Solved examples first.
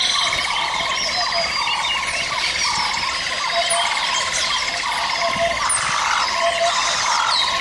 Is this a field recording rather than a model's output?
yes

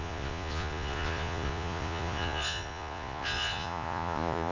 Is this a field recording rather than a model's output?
no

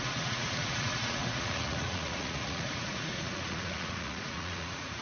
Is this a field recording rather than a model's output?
no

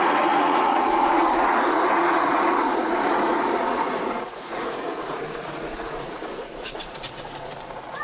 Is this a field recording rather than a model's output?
no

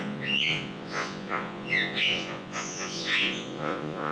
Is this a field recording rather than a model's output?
no